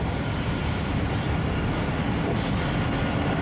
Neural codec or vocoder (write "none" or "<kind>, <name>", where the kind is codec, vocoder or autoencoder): none